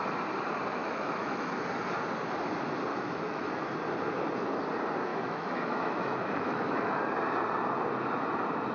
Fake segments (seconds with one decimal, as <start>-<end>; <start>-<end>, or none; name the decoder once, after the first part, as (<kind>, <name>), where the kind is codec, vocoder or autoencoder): 0.8-1.6 (autoencoder, DAC-VAE); 2.9-3.5; 5.1-7.0